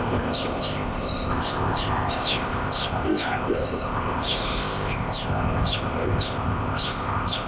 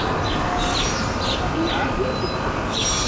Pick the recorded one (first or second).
second